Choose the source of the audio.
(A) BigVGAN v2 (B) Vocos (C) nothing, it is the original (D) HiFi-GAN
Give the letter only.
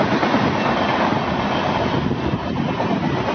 C